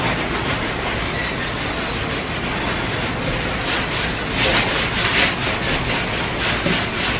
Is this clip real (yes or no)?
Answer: yes